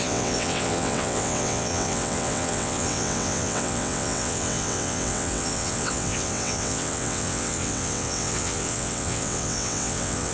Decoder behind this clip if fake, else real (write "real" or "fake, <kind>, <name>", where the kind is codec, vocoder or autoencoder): fake, vocoder, WaveNeXt